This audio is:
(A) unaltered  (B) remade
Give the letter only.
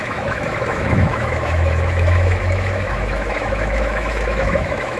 B